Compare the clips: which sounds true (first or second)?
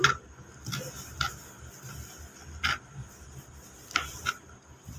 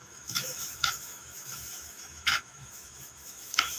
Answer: first